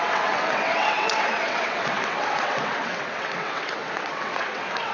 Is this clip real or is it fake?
fake